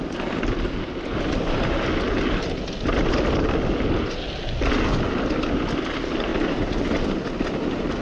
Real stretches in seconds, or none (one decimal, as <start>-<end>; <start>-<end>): 0.0-8.0